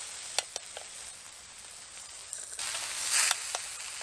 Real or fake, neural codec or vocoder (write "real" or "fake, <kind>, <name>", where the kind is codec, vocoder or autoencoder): real